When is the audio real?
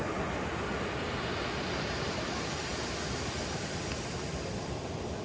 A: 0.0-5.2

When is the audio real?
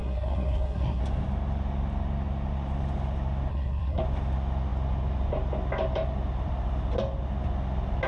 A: 1.0-3.5; 4.0-8.1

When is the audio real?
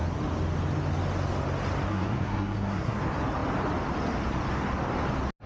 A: 0.0-1.9; 3.0-5.5